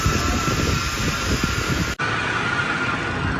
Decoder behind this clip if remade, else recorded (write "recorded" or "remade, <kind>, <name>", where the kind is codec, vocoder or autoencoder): recorded